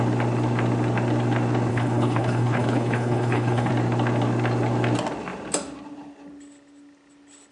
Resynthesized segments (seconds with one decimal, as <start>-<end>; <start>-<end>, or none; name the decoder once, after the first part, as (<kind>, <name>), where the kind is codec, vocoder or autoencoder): 1.7-3.7 (codec, HILCodec)